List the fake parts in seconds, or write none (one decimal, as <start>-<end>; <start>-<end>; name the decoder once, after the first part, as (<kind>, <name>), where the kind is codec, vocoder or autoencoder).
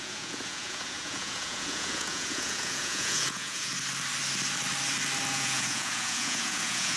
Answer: 0.0-3.7 (vocoder, Vocos); 5.3-7.0